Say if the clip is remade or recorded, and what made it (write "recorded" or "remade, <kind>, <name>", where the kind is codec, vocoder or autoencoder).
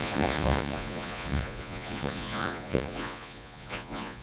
remade, vocoder, Vocos